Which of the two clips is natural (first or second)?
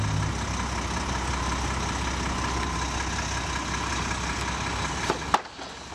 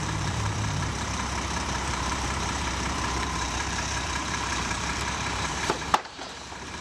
first